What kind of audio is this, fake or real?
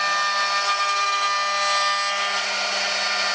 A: real